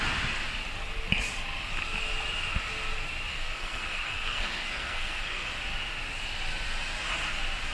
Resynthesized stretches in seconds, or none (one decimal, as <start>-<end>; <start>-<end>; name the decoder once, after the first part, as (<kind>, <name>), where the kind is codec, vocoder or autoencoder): 3.3-5.5 (codec, SNAC)